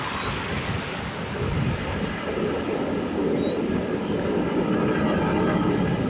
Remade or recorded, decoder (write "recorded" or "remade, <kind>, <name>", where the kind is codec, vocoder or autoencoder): recorded